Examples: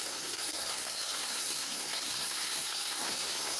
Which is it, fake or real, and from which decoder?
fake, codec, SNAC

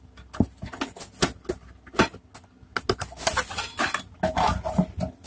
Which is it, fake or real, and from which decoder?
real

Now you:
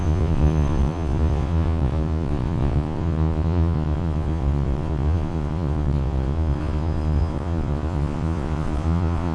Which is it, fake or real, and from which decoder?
fake, vocoder, Vocos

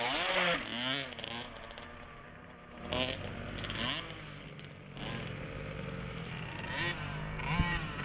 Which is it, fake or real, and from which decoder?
real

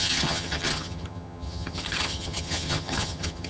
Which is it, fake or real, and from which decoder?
fake, vocoder, HiFi-GAN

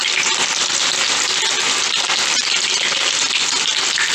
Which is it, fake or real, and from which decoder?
real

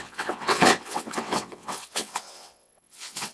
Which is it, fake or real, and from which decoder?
fake, vocoder, WaveNeXt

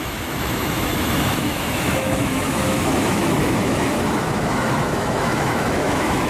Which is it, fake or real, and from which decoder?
fake, autoencoder, DAC-VAE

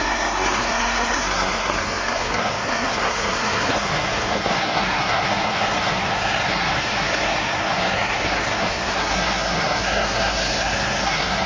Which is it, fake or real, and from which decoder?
fake, codec, SNAC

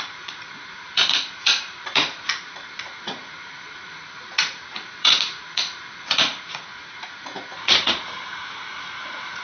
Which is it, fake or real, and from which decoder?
fake, vocoder, Vocos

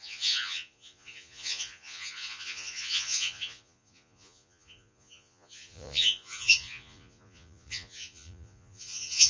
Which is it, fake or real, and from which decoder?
fake, vocoder, Vocos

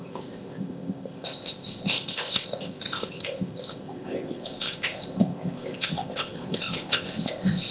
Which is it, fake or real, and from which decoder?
fake, codec, ZipCodec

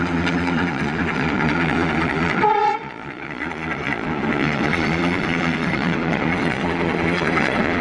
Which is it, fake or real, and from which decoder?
fake, vocoder, Vocos